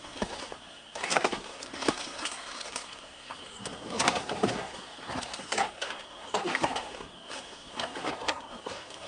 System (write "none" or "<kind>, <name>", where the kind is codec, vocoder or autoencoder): codec, SNAC